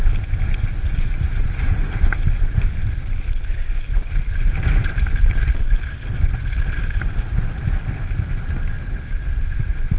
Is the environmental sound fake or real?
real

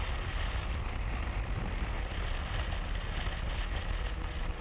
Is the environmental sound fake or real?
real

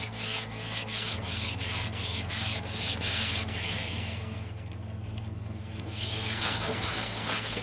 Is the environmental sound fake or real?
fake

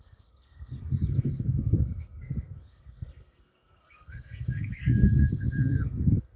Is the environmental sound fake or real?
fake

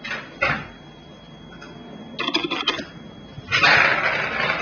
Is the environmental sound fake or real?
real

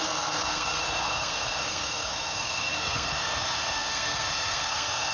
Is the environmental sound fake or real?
fake